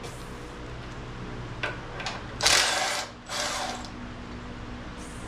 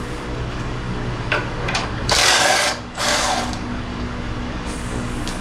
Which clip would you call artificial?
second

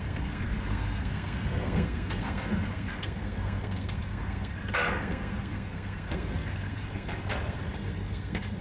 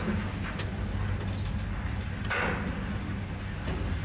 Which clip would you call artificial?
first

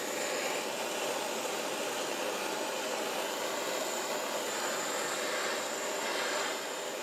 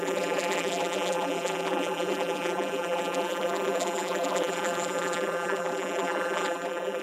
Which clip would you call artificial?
second